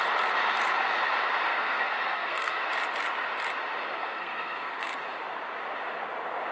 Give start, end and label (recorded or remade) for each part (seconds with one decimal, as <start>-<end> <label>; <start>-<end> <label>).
0.0-1.5 recorded; 1.5-2.6 remade; 2.6-4.0 recorded; 4.0-5.0 remade; 5.0-6.5 recorded